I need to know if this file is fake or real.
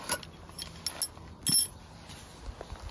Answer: real